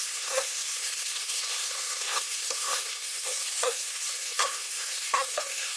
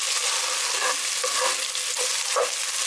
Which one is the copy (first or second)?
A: first